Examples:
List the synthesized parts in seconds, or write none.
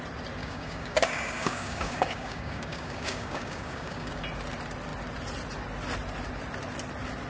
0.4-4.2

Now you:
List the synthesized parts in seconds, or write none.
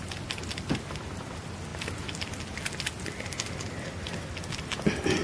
none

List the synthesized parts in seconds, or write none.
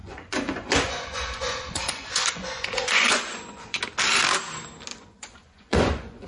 0.0-3.8; 4.9-6.3